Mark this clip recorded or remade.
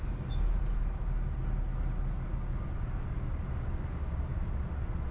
recorded